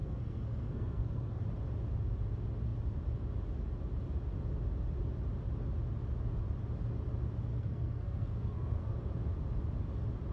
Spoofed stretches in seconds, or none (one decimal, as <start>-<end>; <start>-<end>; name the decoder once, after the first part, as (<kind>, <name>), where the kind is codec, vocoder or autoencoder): 0.0-1.4 (codec, SNAC); 7.5-8.9